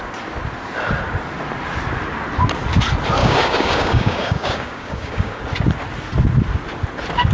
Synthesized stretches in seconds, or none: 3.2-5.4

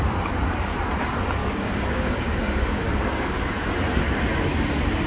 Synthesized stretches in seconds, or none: 1.4-3.5

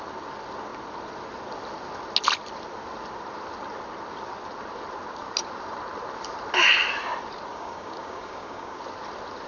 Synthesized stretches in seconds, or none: 7.5-8.8

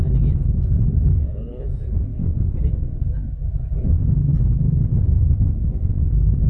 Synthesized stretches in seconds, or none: 1.1-1.6; 2.1-3.0

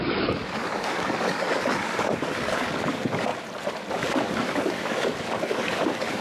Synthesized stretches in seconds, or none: 0.0-3.3; 3.9-6.2